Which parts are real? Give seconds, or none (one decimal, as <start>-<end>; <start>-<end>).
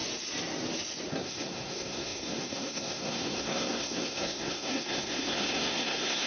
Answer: 0.0-1.1